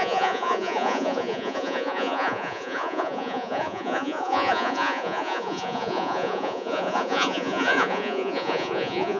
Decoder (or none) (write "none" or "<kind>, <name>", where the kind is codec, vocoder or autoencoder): vocoder, Vocos